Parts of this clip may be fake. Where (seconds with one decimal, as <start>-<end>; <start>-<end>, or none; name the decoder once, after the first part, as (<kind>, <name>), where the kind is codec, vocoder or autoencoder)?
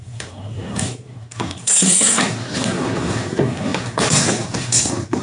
0.0-5.2 (codec, SNAC)